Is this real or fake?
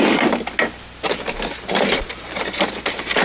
real